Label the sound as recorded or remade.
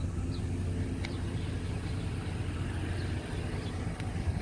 recorded